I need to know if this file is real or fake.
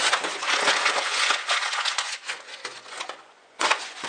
fake